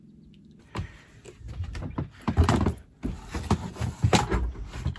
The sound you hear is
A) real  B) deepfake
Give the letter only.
A